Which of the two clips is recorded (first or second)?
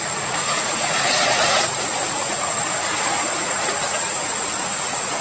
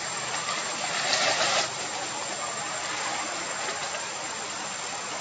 second